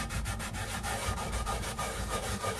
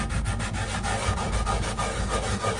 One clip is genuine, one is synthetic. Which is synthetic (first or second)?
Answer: first